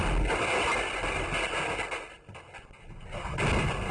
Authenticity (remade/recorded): recorded